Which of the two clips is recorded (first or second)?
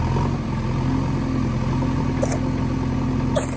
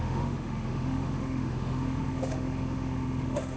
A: first